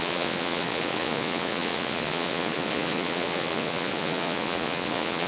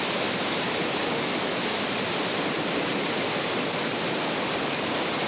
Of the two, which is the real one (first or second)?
second